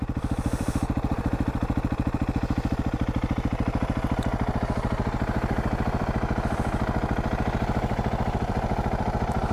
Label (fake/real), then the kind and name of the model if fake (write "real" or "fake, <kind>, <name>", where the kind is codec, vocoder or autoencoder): fake, vocoder, BigVGAN v2